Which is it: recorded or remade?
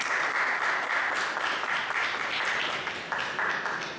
recorded